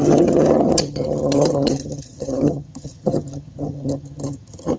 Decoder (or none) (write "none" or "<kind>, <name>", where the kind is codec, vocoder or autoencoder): vocoder, HiFi-GAN